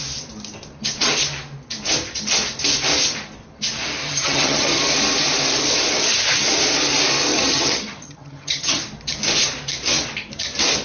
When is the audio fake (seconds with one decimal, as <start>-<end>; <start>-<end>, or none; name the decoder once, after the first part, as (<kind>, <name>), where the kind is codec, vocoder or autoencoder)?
4.0-4.7 (vocoder, HiFi-GAN); 7.3-8.8